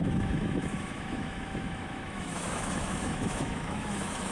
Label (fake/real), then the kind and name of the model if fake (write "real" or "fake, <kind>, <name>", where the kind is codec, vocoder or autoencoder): fake, autoencoder, DAC-VAE